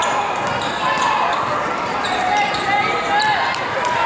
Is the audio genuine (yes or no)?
yes